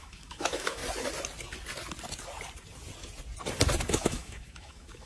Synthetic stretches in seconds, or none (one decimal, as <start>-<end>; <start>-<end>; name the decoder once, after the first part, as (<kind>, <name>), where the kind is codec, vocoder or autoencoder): 0.0-0.8 (autoencoder, DAC-VAE); 3.9-5.1